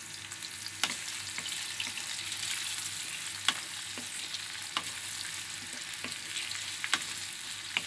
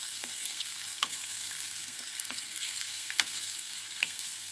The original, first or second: first